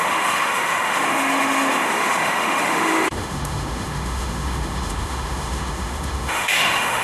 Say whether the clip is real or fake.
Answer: fake